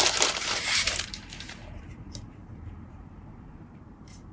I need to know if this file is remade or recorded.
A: remade